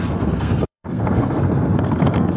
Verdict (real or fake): fake